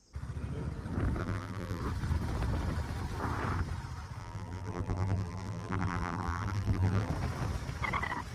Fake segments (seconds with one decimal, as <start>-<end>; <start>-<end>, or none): 1.2-1.8; 4.2-7.1